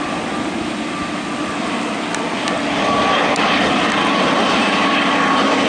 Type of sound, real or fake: real